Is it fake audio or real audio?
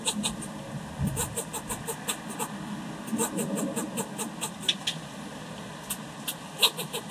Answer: real